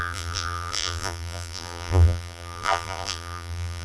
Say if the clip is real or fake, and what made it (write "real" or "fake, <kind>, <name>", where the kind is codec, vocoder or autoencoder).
fake, vocoder, BigVGAN v2